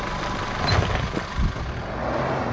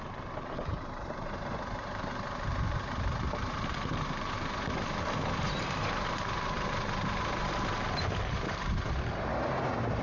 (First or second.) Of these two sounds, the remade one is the second